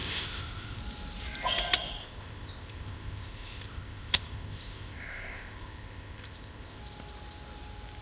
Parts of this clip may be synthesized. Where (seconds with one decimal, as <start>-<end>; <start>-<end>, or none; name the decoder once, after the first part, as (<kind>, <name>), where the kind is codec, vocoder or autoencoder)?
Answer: 0.0-0.8 (codec, ZipCodec); 2.0-6.8